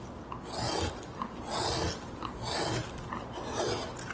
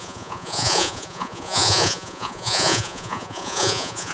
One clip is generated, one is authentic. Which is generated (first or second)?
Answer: second